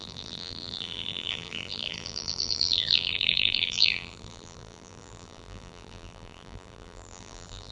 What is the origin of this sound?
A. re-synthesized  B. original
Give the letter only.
A